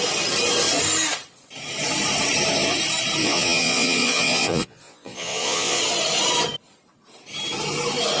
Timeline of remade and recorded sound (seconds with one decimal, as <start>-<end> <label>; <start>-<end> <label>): 0.0-3.2 recorded; 3.2-5.8 remade; 5.8-8.2 recorded

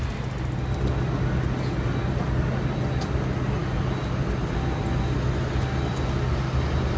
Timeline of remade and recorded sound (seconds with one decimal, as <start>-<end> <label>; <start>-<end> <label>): 0.0-7.0 recorded

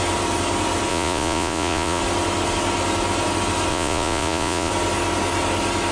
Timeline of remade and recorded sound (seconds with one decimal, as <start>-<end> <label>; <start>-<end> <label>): 0.0-0.9 recorded; 0.9-2.0 remade; 2.0-3.7 recorded; 3.7-4.7 remade; 4.7-5.9 recorded

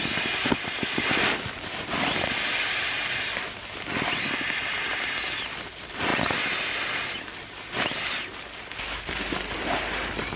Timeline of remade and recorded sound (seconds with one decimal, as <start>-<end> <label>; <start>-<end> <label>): 0.0-10.4 recorded

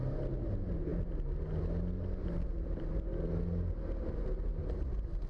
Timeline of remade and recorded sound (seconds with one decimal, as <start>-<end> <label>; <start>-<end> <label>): 0.0-5.3 recorded